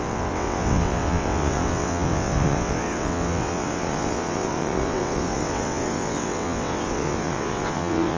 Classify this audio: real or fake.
fake